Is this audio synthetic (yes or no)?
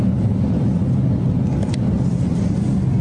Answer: no